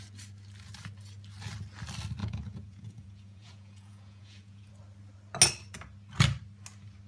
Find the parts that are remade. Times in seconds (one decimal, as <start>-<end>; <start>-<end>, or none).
2.2-4.7